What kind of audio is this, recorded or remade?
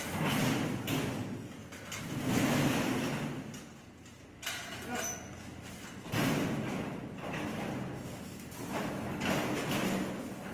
recorded